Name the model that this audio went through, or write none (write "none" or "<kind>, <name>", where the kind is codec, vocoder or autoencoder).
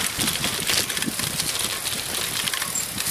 none